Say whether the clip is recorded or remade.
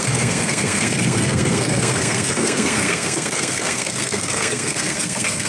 remade